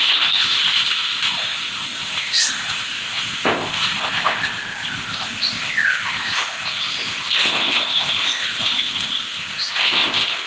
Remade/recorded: remade